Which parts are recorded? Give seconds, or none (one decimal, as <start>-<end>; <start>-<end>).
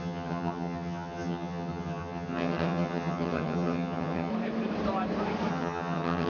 4.3-5.5